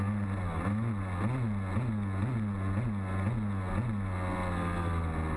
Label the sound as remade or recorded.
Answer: recorded